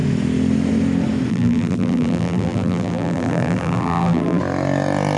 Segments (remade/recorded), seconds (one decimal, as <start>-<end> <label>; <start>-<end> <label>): 0.0-1.3 recorded; 1.3-4.4 remade; 4.4-5.2 recorded